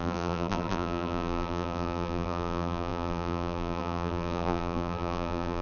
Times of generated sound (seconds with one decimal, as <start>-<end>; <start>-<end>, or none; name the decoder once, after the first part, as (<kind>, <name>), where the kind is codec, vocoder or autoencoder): 0.0-5.6 (vocoder, BigVGAN v2)